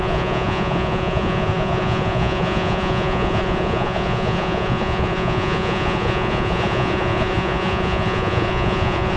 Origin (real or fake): fake